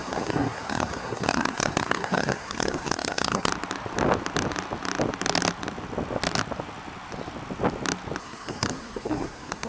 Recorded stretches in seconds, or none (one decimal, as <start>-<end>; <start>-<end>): 3.5-8.2